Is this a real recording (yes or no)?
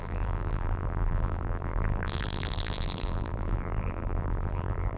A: no